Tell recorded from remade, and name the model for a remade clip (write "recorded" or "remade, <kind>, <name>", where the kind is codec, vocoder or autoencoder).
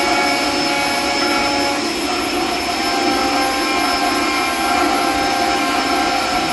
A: recorded